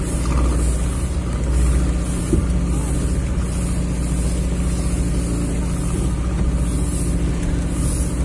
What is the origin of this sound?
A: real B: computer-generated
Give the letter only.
A